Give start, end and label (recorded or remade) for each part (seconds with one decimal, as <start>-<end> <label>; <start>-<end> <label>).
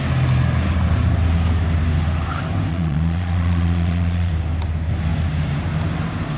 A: 0.0-2.7 recorded; 2.7-4.3 remade; 4.3-6.4 recorded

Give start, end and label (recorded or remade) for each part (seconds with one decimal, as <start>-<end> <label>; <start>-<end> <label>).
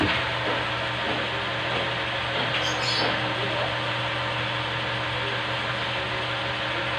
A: 0.0-7.0 recorded